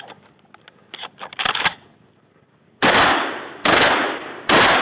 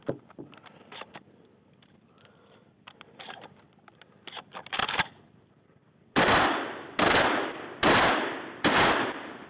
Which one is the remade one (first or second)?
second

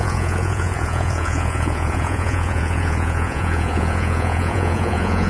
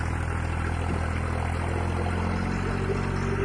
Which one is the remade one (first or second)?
first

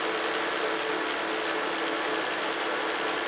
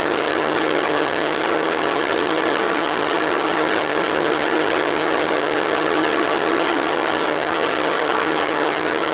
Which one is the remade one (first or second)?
second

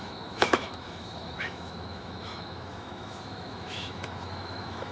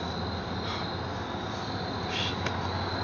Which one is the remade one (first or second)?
first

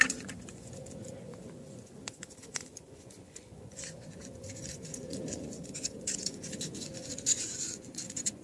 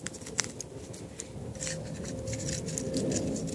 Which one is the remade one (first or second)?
first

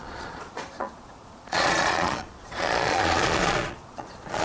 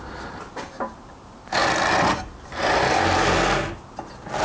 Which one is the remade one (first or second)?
first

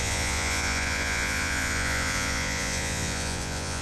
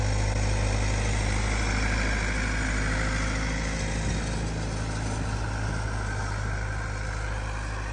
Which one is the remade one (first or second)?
first